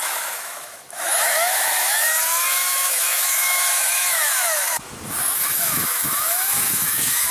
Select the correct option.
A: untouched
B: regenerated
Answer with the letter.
B